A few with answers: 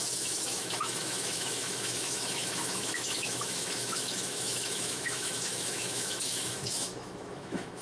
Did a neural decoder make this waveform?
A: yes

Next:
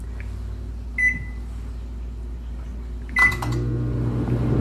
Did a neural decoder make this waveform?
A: no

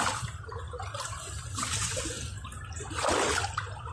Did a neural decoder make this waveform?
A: no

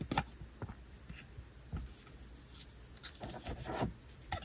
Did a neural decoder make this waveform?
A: no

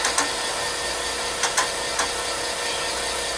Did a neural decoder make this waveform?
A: no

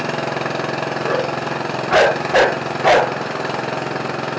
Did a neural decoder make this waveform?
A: no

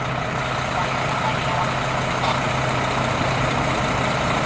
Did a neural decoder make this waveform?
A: no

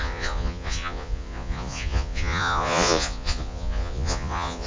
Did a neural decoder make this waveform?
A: yes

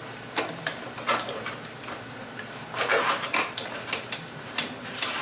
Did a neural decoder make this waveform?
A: yes